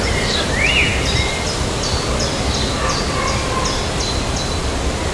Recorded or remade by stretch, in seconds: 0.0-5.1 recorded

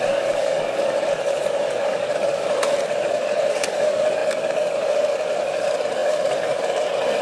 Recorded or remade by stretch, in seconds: 0.0-7.2 remade

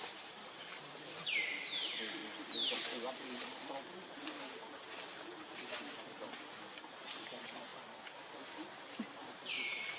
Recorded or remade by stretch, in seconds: 0.0-2.2 remade; 2.2-3.2 recorded; 3.2-7.7 remade; 7.7-9.2 recorded; 9.2-10.0 remade

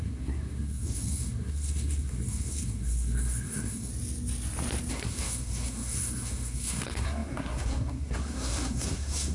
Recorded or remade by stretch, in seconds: 0.0-3.9 remade; 3.9-4.9 recorded; 4.9-9.3 remade

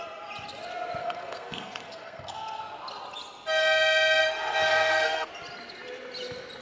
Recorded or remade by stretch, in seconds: 0.0-1.0 recorded; 1.0-2.6 remade; 2.6-4.2 recorded; 4.2-5.3 remade; 5.3-6.6 recorded

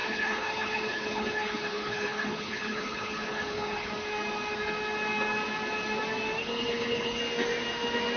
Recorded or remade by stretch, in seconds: 0.0-3.9 remade; 3.9-6.4 recorded; 6.4-7.2 remade; 7.2-8.2 recorded